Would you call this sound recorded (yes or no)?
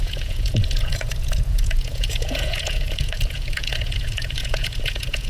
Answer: no